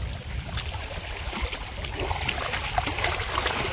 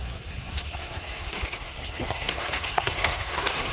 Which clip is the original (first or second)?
first